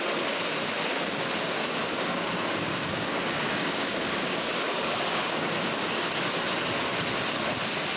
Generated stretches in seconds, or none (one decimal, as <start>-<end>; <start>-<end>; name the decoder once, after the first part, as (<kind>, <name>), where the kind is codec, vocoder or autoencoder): 1.8-6.1 (codec, DAC)